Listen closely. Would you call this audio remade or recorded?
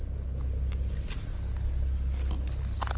recorded